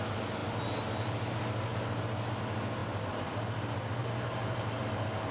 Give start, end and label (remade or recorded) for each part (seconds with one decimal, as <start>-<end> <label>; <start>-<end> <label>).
0.0-2.8 recorded; 2.8-3.4 remade; 3.4-4.0 recorded; 4.0-4.8 remade; 4.8-5.3 recorded

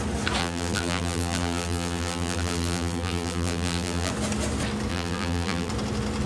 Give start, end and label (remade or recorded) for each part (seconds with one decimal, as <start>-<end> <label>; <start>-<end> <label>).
0.0-0.4 recorded; 0.4-4.1 remade; 4.1-4.9 recorded; 4.9-5.7 remade; 5.7-6.3 recorded

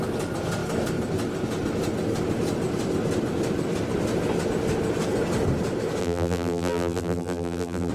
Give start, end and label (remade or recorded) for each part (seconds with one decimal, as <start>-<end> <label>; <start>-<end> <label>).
0.0-6.0 recorded; 6.0-7.9 remade

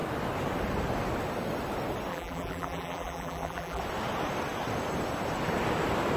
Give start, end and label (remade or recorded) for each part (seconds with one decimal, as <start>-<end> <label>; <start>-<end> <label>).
0.0-2.1 recorded; 2.1-3.8 remade; 3.8-6.2 recorded

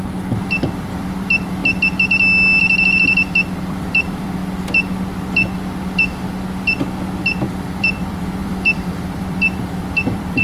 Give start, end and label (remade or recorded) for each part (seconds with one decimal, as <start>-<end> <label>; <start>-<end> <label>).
0.0-1.6 remade; 1.6-3.7 recorded; 3.7-4.4 remade; 4.4-7.4 recorded; 7.4-10.4 remade

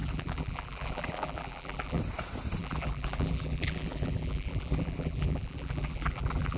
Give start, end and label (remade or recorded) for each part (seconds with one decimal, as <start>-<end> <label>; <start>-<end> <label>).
0.0-2.0 remade; 2.0-2.6 recorded; 2.6-6.6 remade

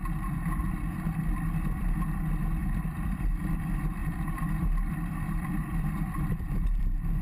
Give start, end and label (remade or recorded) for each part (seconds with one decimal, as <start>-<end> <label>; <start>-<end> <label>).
0.0-0.6 recorded; 0.6-2.2 remade; 2.2-2.6 recorded; 2.6-3.5 remade; 3.5-4.0 recorded; 4.0-6.8 remade; 6.8-7.2 recorded

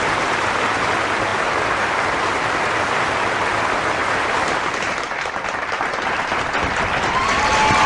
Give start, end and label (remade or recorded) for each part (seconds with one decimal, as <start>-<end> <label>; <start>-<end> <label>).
0.0-4.0 recorded; 4.0-6.4 remade; 6.4-7.9 recorded